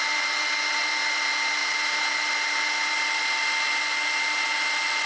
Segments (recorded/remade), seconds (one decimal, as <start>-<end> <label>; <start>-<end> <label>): 0.0-5.1 recorded